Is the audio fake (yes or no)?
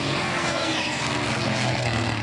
yes